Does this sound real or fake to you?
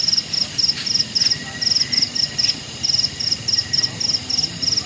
real